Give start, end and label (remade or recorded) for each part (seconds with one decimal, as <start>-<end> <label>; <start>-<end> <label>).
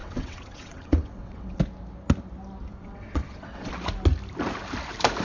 0.0-1.6 remade; 1.6-2.6 recorded; 2.6-3.7 remade; 3.7-5.2 recorded